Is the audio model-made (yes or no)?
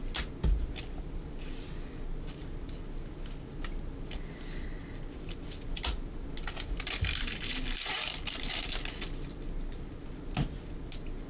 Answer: no